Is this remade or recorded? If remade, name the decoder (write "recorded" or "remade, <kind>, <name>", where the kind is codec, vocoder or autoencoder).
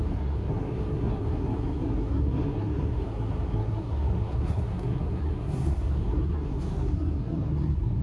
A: remade, codec, SNAC